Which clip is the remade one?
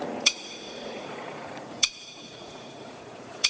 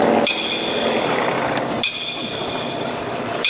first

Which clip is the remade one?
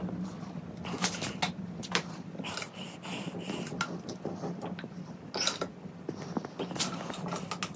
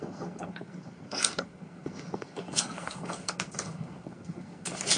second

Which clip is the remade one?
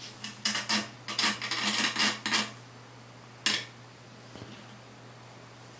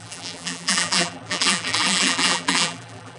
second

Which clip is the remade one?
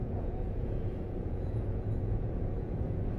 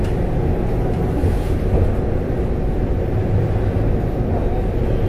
first